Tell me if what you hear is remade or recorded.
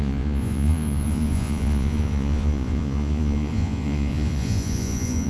remade